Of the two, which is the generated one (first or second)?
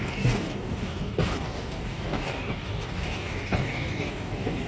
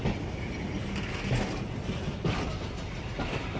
first